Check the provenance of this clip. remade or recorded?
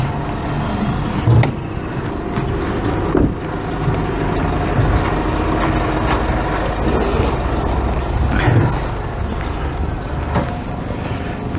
recorded